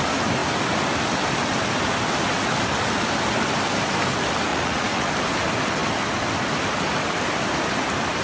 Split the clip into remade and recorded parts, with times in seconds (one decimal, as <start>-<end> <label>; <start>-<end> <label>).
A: 0.0-4.5 recorded; 4.5-5.1 remade; 5.1-8.2 recorded